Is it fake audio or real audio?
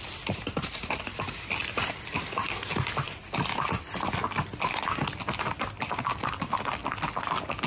real